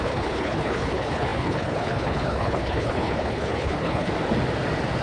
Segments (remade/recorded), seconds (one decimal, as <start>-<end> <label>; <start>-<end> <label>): 0.0-4.1 remade; 4.1-5.0 recorded